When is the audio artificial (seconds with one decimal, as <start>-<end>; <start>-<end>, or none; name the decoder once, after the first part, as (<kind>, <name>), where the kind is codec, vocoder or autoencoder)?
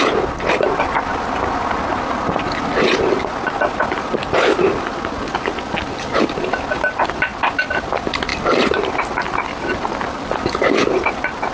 8.3-8.9 (vocoder, BigVGAN v2)